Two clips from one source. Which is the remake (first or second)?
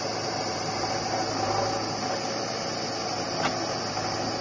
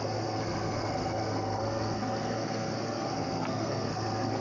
second